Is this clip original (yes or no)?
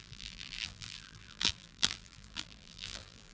no